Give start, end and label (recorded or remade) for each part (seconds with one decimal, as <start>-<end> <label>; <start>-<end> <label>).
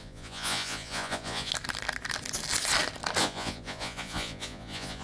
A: 0.0-1.5 remade; 1.5-3.2 recorded; 3.2-5.0 remade